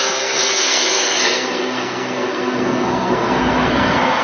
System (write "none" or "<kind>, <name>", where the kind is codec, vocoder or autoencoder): codec, SNAC